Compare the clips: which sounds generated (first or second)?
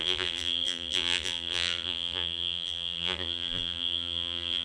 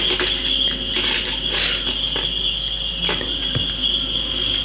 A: first